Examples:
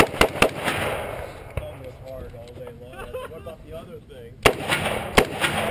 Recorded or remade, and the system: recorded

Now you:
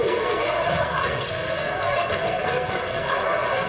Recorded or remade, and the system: remade, codec, SNAC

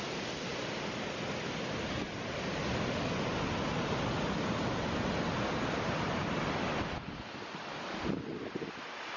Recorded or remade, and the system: recorded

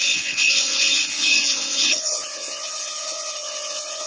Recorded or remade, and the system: remade, vocoder, WaveNeXt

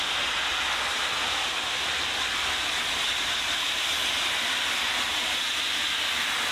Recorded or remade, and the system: recorded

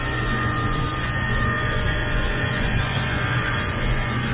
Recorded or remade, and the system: remade, vocoder, Vocos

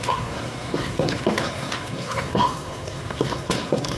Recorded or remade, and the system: remade, codec, SNAC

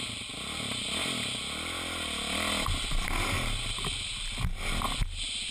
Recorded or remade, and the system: recorded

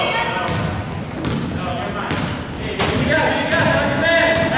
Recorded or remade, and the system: recorded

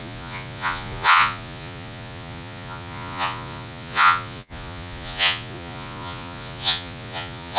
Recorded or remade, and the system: remade, vocoder, Vocos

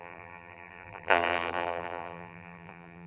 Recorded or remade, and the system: remade, vocoder, BigVGAN v2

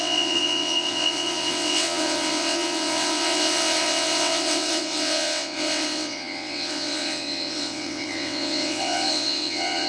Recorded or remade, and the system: remade, vocoder, WaveNeXt